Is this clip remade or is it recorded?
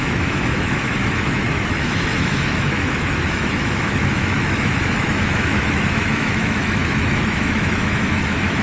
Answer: remade